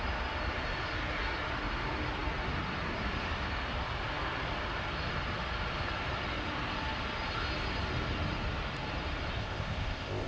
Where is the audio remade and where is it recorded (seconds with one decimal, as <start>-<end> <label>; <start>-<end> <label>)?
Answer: 0.0-9.4 recorded; 9.4-10.3 remade

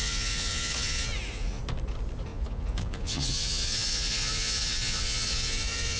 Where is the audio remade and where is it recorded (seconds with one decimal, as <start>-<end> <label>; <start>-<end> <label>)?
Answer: 0.0-1.6 remade; 1.6-2.3 recorded; 2.3-6.0 remade

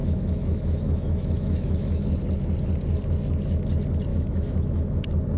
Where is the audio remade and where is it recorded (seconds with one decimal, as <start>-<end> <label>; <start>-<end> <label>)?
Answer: 0.0-2.1 remade; 2.1-4.1 recorded; 4.1-5.0 remade; 5.0-5.4 recorded